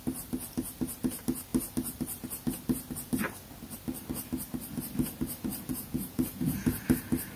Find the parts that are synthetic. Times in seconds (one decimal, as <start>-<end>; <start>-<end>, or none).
5.7-6.8